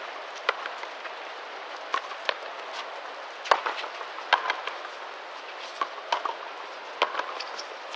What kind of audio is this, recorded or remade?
recorded